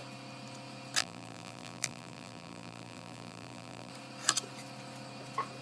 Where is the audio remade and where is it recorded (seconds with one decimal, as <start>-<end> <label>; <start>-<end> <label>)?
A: 0.0-1.0 recorded; 1.0-3.9 remade; 3.9-5.6 recorded